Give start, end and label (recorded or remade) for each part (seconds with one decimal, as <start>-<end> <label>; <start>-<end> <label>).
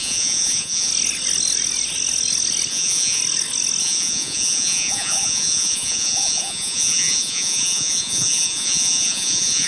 0.0-0.9 remade; 0.9-2.7 recorded; 2.7-3.2 remade; 3.2-3.8 recorded; 3.8-9.7 remade